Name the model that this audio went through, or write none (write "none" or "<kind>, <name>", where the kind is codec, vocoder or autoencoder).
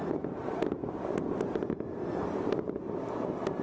none